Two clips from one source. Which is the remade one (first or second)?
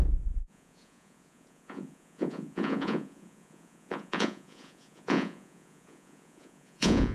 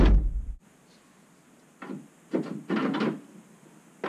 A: first